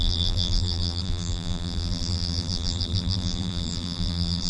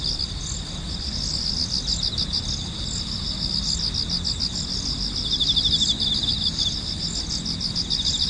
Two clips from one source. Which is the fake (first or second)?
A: first